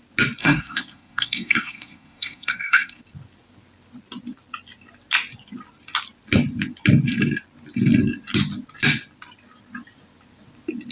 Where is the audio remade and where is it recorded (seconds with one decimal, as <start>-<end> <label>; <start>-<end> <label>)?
0.0-0.4 recorded; 0.4-3.0 remade; 3.0-10.9 recorded